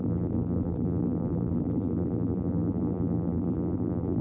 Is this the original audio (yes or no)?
no